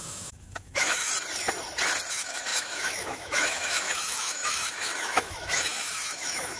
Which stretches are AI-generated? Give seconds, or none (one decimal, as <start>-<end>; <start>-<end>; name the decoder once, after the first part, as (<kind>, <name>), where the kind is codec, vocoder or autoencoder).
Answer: 0.0-1.1 (autoencoder, DAC-VAE); 2.1-6.6